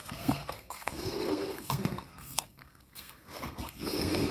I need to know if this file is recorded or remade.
remade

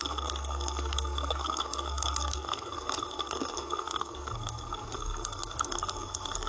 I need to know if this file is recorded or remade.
remade